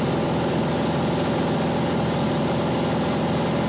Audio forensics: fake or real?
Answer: real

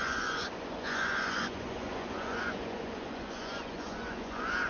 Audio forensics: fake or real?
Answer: fake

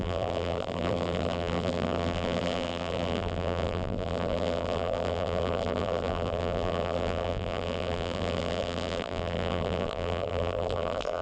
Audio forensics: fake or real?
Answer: fake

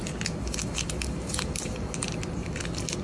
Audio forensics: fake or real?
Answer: real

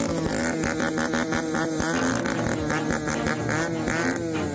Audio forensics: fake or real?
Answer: real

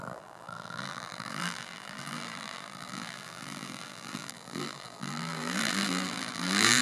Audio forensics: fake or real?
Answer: fake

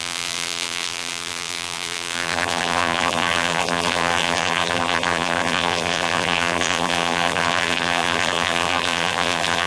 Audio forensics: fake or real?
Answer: fake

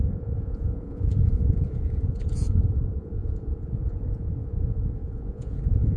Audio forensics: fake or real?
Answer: fake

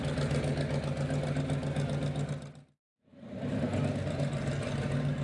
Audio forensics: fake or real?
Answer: real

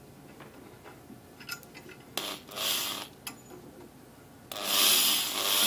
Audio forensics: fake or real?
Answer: real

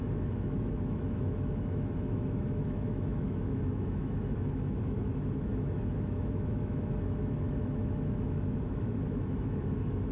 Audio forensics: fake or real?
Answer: fake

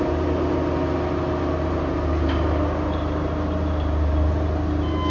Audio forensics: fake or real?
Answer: real